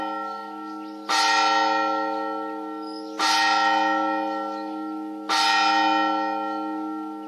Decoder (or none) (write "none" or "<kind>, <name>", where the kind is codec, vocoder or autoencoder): none